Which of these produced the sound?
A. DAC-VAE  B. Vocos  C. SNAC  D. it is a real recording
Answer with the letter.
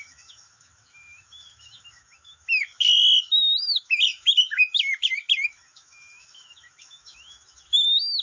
A